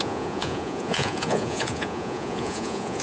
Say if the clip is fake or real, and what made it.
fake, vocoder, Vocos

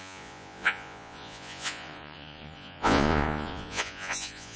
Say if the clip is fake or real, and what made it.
fake, vocoder, Vocos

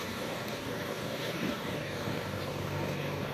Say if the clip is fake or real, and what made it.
fake, codec, DAC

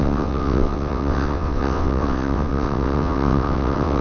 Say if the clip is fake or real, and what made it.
fake, vocoder, WaveNeXt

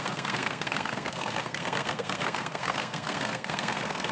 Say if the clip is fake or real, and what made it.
fake, codec, SNAC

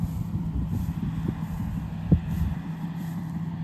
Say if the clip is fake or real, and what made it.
real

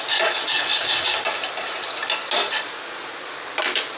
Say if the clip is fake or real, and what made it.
real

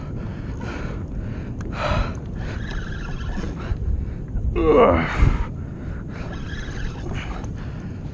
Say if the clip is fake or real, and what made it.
real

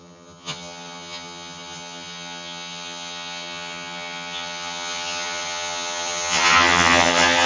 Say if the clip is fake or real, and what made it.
fake, vocoder, HiFi-GAN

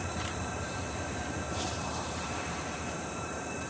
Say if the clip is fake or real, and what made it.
fake, vocoder, BigVGAN v2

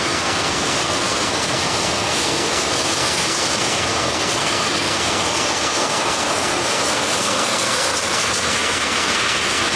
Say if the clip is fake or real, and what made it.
fake, codec, SNAC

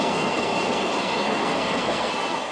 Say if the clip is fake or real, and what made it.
fake, codec, SNAC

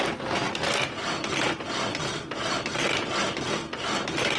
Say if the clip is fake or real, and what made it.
real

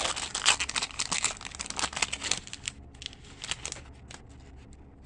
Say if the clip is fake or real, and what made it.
real